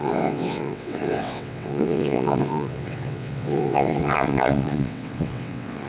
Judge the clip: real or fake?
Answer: fake